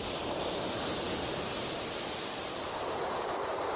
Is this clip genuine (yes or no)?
yes